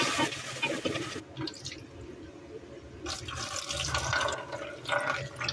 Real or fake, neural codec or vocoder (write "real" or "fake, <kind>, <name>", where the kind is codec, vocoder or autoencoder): real